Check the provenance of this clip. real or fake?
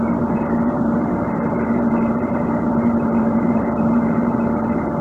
fake